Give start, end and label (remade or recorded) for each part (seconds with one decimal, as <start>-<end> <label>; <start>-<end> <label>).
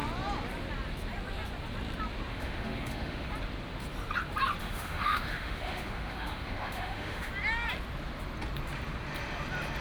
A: 0.0-2.3 recorded; 2.3-3.3 remade; 3.3-4.6 recorded; 4.6-7.3 remade; 7.3-9.8 recorded